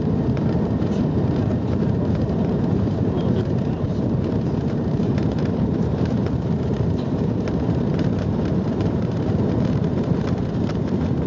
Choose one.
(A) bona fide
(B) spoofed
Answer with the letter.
B